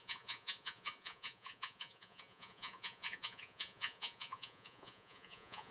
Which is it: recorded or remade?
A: remade